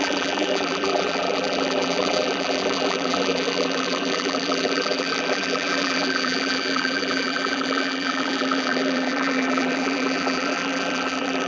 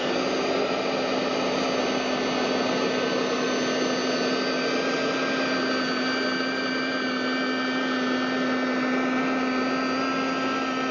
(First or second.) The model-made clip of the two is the first